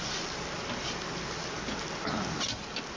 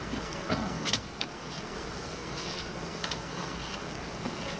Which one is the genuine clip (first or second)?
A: first